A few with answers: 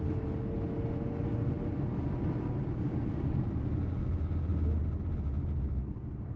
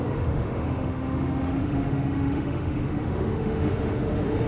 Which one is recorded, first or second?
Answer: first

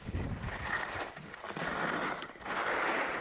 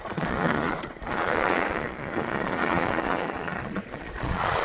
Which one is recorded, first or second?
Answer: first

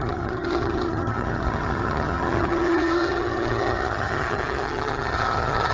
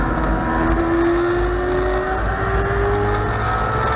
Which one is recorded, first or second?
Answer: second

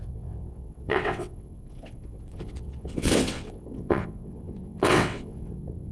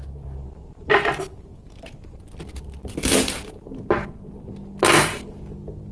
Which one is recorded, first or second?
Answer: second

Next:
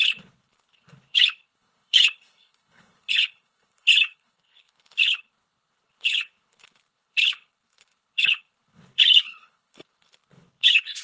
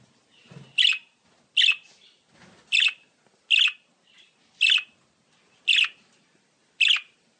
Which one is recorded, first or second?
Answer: second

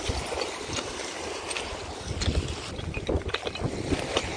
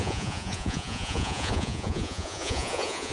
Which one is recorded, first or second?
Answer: first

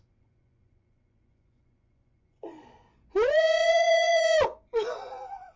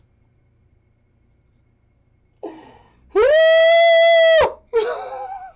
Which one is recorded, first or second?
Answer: second